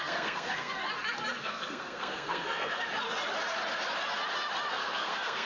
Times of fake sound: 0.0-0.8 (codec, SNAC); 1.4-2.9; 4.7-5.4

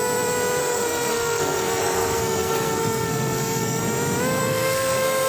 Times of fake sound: 0.6-3.8 (codec, SNAC); 4.4-5.3

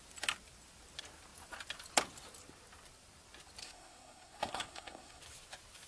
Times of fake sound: 3.6-5.2 (codec, SNAC)

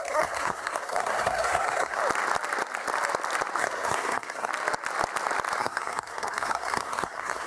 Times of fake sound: 0.0-2.0 (codec, SNAC); 3.6-4.5; 5.6-7.5